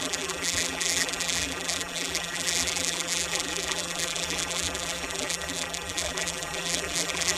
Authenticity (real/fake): fake